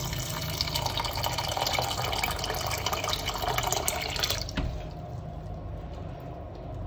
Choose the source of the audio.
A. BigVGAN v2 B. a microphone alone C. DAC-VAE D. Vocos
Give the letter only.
B